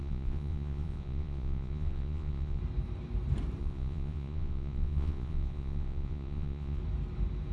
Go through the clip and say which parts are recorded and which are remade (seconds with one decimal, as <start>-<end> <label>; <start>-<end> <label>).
0.0-2.6 remade; 2.6-3.6 recorded; 3.6-6.8 remade; 6.8-7.5 recorded